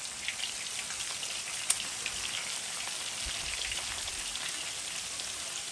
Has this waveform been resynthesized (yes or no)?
no